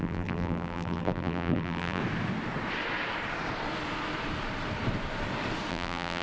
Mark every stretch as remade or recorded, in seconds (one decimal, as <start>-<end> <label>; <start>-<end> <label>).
0.0-2.0 remade; 2.0-5.7 recorded; 5.7-6.2 remade